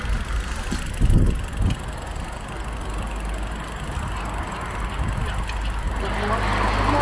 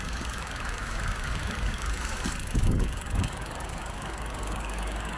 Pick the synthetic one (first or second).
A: second